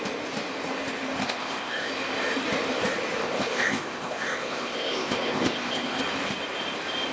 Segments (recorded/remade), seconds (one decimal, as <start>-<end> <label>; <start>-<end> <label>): 0.0-1.2 recorded; 1.2-1.9 remade; 1.9-3.2 recorded; 3.2-6.0 remade; 6.0-7.1 recorded

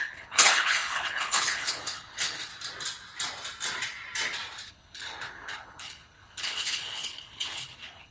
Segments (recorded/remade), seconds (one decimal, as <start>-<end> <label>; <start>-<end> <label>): 0.0-2.5 remade; 2.5-4.7 recorded; 4.7-8.1 remade

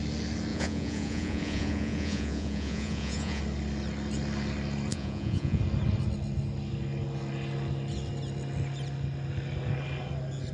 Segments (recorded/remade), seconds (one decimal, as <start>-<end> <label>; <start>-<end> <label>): 0.0-0.5 recorded; 0.5-3.4 remade; 3.4-4.9 recorded; 4.9-5.6 remade; 5.6-10.5 recorded

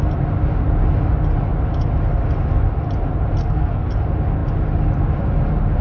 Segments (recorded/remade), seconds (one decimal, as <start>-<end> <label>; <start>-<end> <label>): 0.0-3.4 recorded; 3.4-3.9 remade; 3.9-5.8 recorded